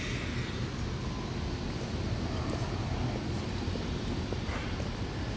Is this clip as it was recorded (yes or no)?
yes